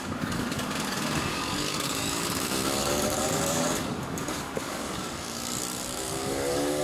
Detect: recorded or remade remade